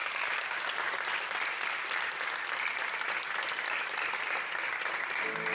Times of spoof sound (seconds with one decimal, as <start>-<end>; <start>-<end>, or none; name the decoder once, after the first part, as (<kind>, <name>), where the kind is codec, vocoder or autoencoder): none